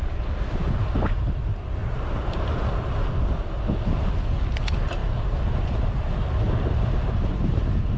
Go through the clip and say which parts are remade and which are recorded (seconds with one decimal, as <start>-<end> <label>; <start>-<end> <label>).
0.0-8.0 recorded